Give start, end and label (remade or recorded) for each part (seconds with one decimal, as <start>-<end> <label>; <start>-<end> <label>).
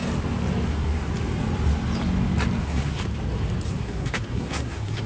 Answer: 0.0-0.7 recorded; 0.7-1.1 remade; 1.1-2.6 recorded; 2.6-3.0 remade; 3.0-3.7 recorded; 3.7-5.1 remade